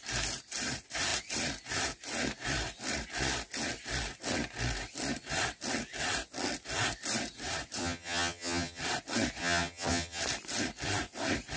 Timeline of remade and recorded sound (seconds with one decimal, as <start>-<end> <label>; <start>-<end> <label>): 0.0-7.8 recorded; 7.8-8.8 remade; 8.8-9.4 recorded; 9.4-10.2 remade; 10.2-11.6 recorded